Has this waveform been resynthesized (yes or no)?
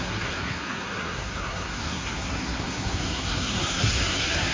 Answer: yes